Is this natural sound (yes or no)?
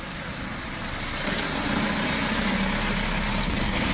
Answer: yes